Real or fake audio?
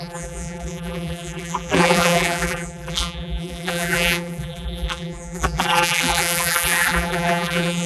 fake